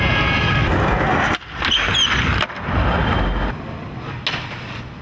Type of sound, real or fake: real